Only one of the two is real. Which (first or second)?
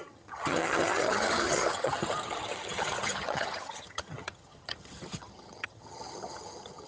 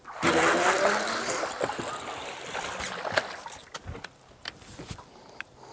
second